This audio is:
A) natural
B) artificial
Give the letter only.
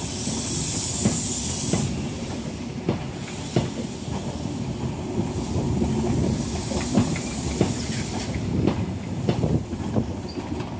A